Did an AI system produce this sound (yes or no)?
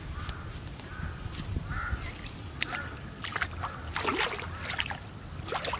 no